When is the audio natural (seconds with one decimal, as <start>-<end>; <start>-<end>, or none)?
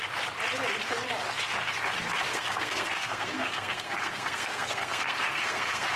0.0-2.3